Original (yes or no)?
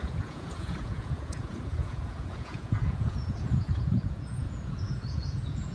no